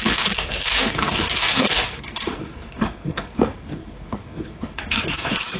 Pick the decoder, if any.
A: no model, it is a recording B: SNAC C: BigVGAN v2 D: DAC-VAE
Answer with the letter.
B